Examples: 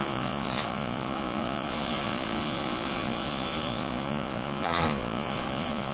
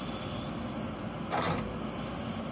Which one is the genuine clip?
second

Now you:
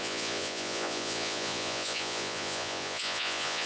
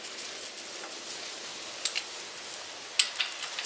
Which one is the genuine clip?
second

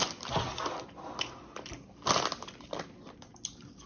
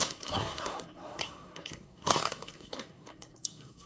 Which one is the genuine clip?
first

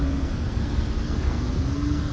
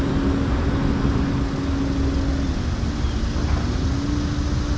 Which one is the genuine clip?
second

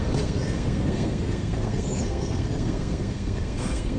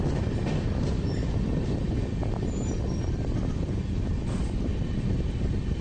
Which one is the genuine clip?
second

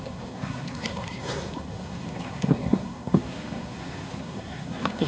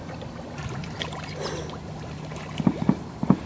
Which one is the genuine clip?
second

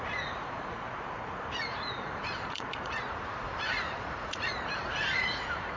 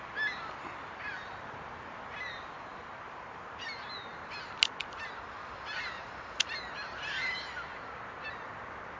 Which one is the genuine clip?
second